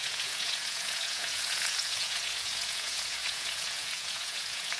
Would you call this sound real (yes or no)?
no